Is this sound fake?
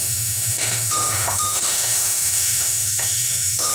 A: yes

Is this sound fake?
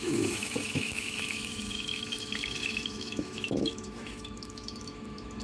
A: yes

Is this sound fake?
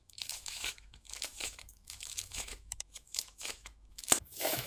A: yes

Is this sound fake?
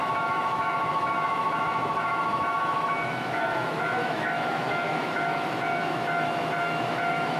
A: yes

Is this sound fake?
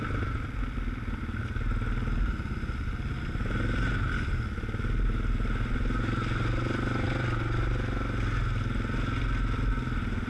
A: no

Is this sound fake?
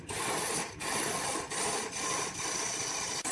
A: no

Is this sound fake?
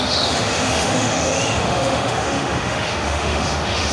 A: yes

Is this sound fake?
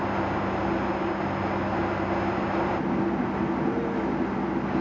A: no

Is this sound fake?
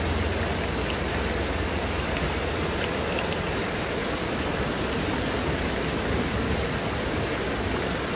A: no